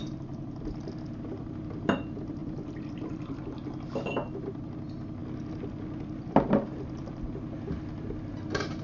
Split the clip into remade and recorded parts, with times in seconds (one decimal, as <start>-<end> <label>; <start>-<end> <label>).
0.0-8.8 recorded